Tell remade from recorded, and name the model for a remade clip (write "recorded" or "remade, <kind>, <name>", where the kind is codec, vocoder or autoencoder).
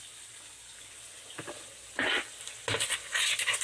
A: recorded